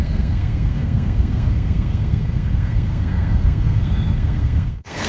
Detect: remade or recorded remade